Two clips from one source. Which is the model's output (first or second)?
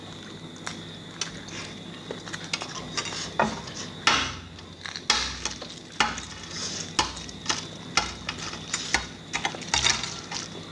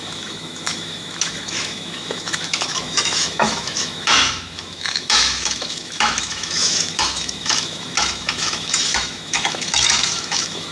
second